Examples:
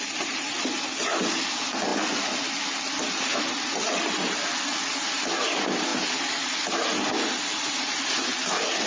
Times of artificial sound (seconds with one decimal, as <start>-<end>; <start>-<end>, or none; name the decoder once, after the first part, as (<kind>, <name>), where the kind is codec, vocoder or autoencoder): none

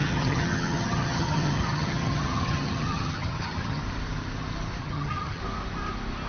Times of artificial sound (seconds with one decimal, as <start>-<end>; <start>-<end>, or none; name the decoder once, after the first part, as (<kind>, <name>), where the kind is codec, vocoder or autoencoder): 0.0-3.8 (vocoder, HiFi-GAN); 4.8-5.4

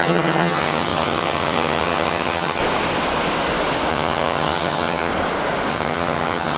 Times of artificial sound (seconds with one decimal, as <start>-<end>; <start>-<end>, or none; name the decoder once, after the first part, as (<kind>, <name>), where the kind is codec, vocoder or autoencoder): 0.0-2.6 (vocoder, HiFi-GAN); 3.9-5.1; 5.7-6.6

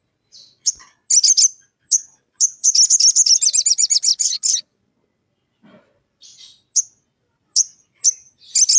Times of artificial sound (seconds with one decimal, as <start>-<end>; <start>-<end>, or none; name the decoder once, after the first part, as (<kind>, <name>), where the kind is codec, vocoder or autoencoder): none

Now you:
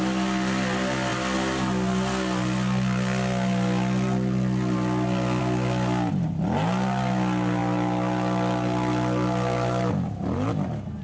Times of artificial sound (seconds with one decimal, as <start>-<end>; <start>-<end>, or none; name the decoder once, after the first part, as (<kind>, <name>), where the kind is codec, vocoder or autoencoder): none

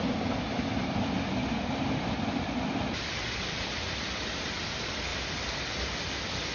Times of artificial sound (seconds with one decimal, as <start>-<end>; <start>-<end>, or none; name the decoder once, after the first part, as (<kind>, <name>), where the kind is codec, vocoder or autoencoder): none

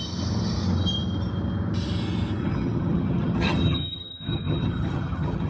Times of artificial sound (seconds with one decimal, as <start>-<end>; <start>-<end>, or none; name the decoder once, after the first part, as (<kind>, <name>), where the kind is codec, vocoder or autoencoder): 2.4-5.5 (vocoder, HiFi-GAN)